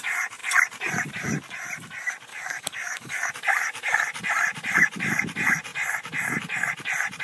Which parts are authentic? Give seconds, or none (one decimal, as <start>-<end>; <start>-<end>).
0.0-2.3; 3.3-7.2